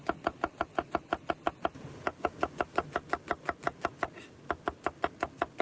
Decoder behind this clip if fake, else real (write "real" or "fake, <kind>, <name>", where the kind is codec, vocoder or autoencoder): real